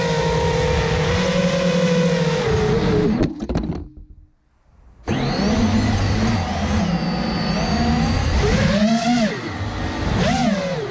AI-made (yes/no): no